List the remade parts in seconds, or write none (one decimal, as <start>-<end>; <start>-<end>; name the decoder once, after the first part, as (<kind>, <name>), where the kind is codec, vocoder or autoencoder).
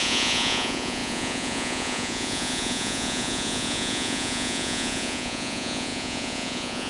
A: 0.0-6.9 (vocoder, Vocos)